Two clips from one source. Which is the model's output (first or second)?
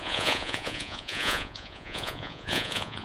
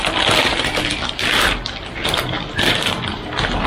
first